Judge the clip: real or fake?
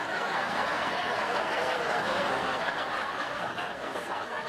fake